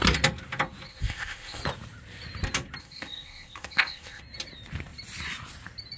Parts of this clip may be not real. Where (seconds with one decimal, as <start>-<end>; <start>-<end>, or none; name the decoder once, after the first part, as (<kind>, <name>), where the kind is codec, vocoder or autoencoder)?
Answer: 0.9-1.6 (codec, ZipCodec); 2.8-4.2